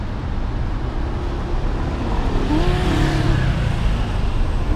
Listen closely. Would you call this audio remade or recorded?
recorded